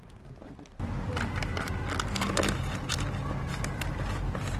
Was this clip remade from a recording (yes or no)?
no